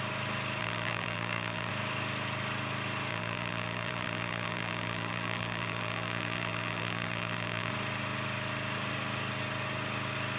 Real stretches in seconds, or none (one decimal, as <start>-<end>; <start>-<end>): 0.0-0.6; 1.7-3.1; 7.7-10.4